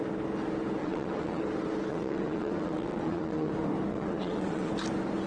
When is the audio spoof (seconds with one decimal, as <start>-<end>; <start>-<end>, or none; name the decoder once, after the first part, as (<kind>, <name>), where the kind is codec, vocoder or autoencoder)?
0.8-1.4 (vocoder, WaveNeXt); 1.9-3.5; 3.9-4.7